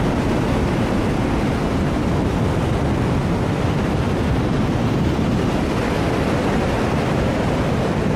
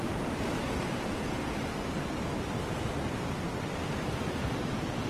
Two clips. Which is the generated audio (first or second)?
second